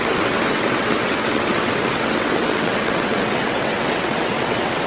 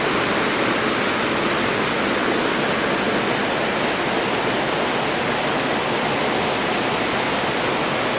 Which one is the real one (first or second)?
second